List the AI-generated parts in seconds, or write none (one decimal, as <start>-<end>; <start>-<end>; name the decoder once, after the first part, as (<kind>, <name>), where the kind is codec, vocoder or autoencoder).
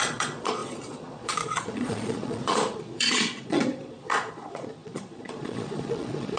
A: 0.0-6.4 (vocoder, Vocos)